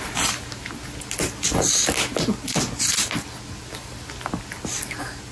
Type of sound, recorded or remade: recorded